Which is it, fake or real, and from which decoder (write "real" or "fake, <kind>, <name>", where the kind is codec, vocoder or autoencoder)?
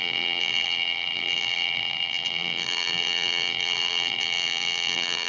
fake, vocoder, BigVGAN v2